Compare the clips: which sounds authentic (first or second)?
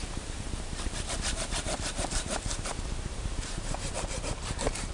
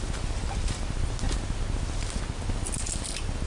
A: second